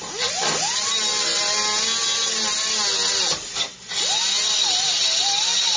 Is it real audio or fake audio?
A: real